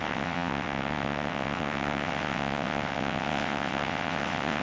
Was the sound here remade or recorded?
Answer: remade